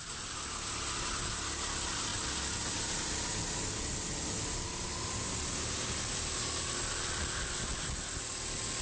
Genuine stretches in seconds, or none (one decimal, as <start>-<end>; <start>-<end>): 0.0-8.8